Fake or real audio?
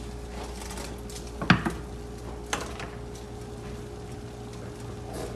real